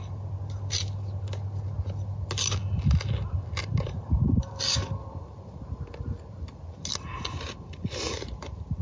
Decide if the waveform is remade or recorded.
recorded